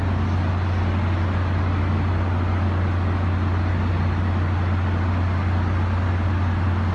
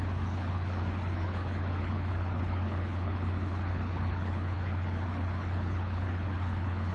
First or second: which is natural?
first